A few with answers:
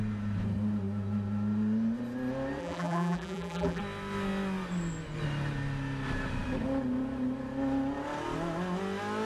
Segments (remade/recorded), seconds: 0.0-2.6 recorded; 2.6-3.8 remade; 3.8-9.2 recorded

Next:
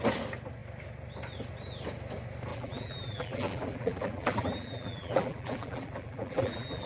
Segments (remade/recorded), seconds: 0.0-2.5 recorded; 2.5-6.9 remade

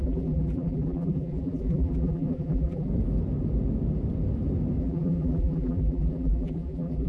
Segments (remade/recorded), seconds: 0.0-2.9 remade; 2.9-4.8 recorded; 4.8-7.1 remade

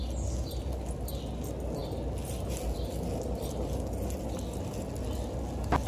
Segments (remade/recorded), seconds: 0.0-5.9 recorded

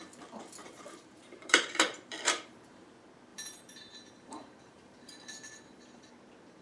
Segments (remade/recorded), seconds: 0.0-0.6 recorded; 0.6-2.9 remade; 2.9-3.3 recorded; 3.3-6.1 remade; 6.1-6.6 recorded